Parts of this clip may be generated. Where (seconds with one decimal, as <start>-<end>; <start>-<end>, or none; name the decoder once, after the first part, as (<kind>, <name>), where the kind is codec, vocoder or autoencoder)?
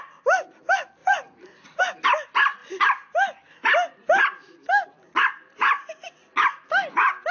1.0-1.8 (vocoder, Vocos)